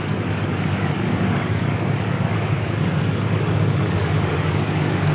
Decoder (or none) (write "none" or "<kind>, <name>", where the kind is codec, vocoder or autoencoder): codec, DAC